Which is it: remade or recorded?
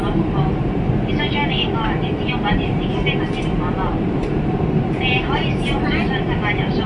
remade